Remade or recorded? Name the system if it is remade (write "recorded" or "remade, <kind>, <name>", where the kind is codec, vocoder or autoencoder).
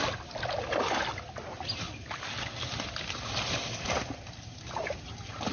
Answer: recorded